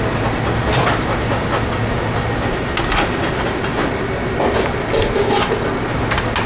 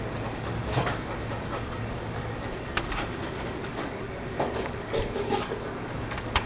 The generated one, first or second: second